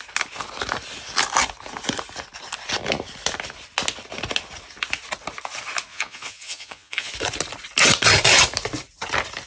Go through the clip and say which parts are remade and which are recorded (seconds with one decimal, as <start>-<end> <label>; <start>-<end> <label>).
0.0-5.9 recorded; 5.9-7.1 remade; 7.1-9.5 recorded